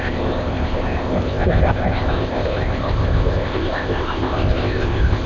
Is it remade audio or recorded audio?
remade